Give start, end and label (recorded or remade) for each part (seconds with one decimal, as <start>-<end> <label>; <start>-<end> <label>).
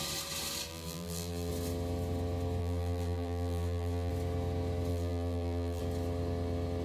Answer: 0.0-0.7 recorded; 0.7-1.5 remade; 1.5-2.6 recorded; 2.6-4.1 remade; 4.1-4.9 recorded; 4.9-5.8 remade; 5.8-6.8 recorded